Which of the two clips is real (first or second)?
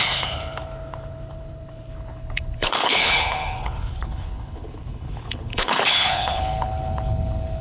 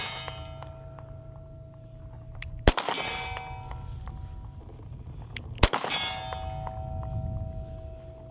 second